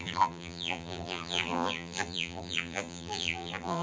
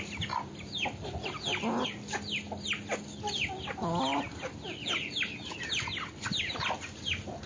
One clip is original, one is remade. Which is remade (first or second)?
first